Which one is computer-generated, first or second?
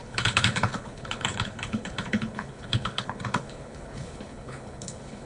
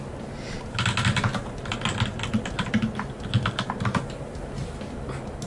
first